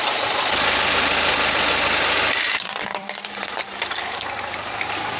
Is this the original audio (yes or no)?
no